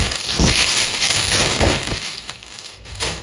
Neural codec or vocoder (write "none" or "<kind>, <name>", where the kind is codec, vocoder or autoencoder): codec, DAC